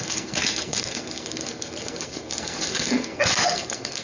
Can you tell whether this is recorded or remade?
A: remade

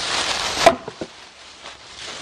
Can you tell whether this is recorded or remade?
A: recorded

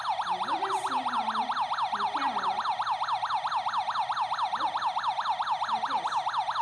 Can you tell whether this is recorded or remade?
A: recorded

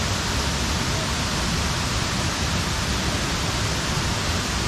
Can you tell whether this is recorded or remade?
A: recorded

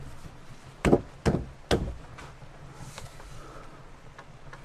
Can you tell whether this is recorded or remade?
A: recorded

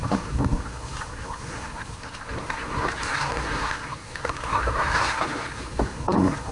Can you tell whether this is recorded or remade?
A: remade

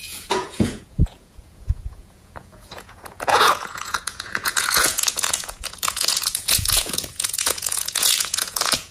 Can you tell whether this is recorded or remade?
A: remade